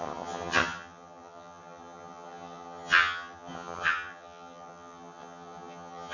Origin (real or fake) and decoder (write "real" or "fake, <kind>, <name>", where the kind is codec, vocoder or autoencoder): fake, vocoder, HiFi-GAN